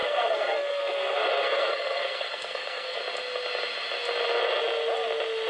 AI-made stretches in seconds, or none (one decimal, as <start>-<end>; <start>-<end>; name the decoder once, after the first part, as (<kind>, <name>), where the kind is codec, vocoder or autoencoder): 0.0-3.0 (codec, SNAC)